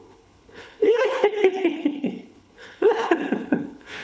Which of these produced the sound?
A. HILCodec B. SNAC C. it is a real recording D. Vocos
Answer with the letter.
A